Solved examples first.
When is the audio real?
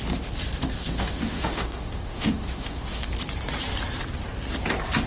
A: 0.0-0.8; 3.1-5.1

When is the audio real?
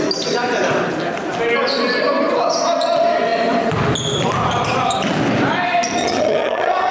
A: 0.0-6.0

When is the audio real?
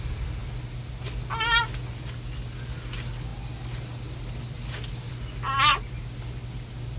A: 0.0-7.0